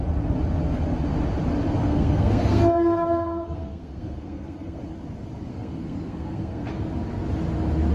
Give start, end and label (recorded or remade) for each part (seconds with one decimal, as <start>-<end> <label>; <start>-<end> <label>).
0.0-1.8 recorded; 1.8-4.8 remade; 4.8-5.5 recorded; 5.5-6.7 remade; 6.7-7.9 recorded